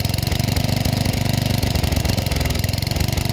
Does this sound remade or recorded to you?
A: recorded